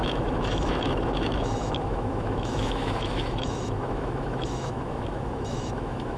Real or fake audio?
fake